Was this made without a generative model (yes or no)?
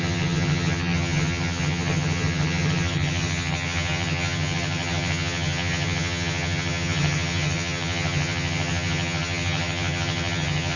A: no